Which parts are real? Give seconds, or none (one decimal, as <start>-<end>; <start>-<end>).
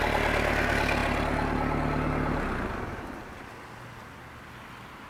0.0-5.1